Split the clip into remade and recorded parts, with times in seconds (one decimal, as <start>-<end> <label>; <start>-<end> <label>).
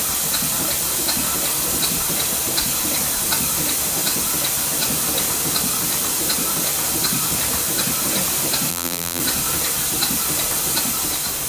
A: 0.0-8.7 recorded; 8.7-9.2 remade; 9.2-11.5 recorded